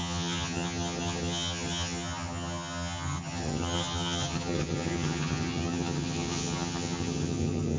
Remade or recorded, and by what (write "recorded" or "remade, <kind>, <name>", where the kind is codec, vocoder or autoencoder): remade, vocoder, HiFi-GAN